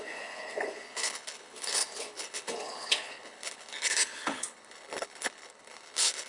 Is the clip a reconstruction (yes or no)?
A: yes